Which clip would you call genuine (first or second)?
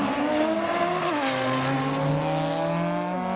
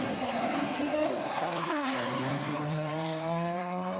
first